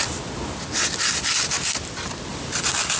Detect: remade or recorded recorded